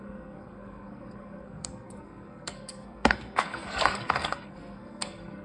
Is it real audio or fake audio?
fake